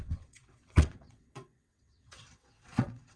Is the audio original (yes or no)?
no